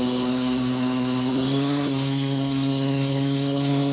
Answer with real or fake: fake